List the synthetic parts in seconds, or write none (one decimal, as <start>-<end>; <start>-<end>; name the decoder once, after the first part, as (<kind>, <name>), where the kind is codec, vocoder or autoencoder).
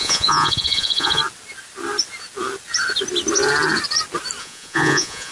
0.0-1.2 (vocoder, Vocos); 4.4-5.3